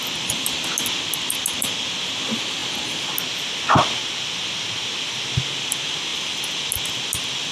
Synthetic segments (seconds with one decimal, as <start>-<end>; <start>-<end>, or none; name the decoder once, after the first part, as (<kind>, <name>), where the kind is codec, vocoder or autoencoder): none